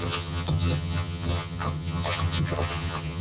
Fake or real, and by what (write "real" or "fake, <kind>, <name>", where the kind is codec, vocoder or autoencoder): fake, vocoder, HiFi-GAN